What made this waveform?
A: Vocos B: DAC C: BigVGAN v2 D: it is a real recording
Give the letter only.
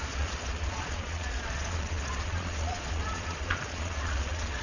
A